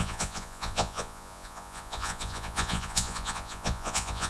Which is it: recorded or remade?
remade